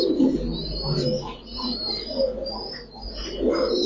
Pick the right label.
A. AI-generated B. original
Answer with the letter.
B